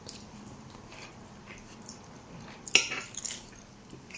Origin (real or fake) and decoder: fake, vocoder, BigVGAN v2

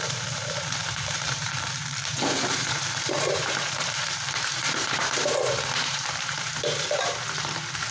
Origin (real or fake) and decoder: fake, vocoder, BigVGAN v2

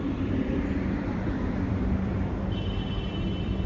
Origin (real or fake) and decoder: fake, vocoder, BigVGAN v2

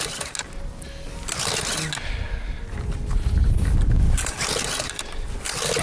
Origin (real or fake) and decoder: real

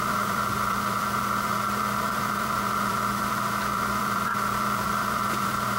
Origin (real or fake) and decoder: fake, vocoder, BigVGAN v2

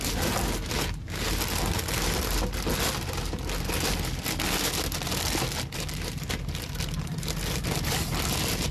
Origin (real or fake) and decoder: real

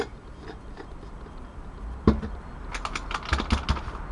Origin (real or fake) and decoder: real